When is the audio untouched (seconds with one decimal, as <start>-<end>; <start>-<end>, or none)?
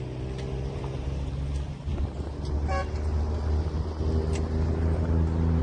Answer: 0.0-5.6